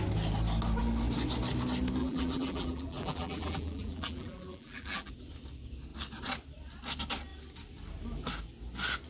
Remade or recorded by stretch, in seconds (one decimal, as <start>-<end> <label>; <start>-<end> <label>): 0.0-2.0 recorded; 2.0-5.1 remade; 5.1-9.1 recorded

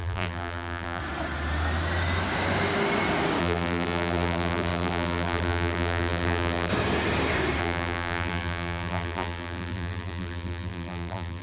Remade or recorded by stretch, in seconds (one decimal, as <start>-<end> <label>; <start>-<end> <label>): 0.0-1.0 remade; 1.0-3.4 recorded; 3.4-6.7 remade; 6.7-7.6 recorded; 7.6-11.4 remade

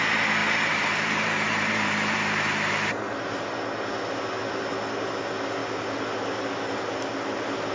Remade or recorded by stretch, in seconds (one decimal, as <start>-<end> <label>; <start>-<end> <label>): 0.0-0.4 recorded; 0.4-3.5 remade; 3.5-7.7 recorded

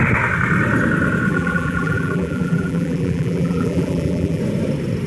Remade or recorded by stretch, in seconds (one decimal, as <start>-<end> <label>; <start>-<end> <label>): 0.0-1.3 recorded; 1.3-4.4 remade; 4.4-5.1 recorded

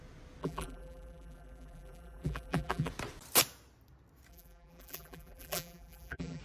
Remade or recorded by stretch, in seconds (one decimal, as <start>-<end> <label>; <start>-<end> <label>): 0.0-0.4 recorded; 0.4-2.9 remade; 2.9-4.3 recorded; 4.3-6.4 remade

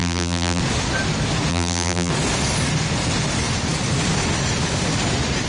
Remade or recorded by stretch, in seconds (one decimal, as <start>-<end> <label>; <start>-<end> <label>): 0.0-0.6 remade; 0.6-1.5 recorded; 1.5-2.1 remade; 2.1-5.5 recorded

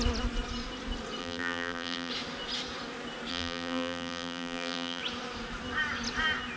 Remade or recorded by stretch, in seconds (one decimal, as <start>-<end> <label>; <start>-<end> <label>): 0.0-1.2 recorded; 1.2-2.1 remade; 2.1-3.3 recorded; 3.3-5.0 remade; 5.0-6.6 recorded

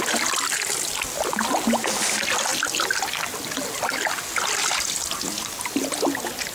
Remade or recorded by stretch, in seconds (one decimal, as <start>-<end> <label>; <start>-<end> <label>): 0.0-6.5 recorded